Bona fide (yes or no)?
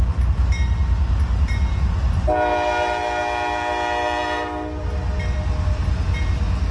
yes